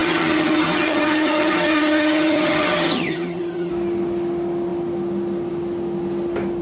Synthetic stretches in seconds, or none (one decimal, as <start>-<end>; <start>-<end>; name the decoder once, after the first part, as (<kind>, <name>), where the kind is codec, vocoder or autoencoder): 0.0-3.7 (vocoder, HiFi-GAN)

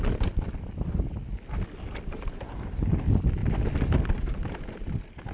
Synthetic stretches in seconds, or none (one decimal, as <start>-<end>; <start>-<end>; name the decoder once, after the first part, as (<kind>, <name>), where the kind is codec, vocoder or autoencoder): none

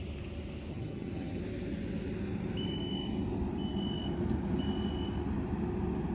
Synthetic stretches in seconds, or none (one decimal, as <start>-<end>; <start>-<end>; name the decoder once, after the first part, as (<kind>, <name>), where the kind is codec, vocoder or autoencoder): 0.7-1.4 (vocoder, HiFi-GAN)

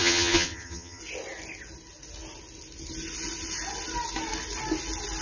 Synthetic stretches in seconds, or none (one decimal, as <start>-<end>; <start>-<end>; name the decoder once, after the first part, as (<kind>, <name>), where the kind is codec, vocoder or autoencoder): 0.0-1.0 (vocoder, HiFi-GAN)

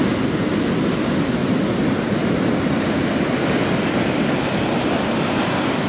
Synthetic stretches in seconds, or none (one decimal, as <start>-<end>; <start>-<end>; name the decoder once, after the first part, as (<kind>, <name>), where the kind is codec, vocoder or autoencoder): none

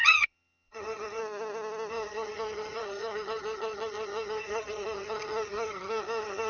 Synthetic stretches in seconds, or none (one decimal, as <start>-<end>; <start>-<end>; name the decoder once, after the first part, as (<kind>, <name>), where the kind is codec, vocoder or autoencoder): 0.0-1.2 (vocoder, HiFi-GAN); 1.9-6.5

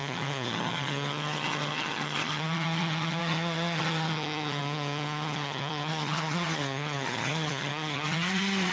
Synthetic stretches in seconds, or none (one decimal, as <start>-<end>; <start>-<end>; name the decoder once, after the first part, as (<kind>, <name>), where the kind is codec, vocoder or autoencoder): 0.0-8.7 (vocoder, HiFi-GAN)

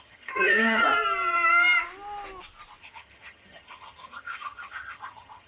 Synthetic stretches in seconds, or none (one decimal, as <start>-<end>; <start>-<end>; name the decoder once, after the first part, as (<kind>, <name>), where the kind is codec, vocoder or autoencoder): 0.0-0.8 (vocoder, HiFi-GAN); 2.8-5.5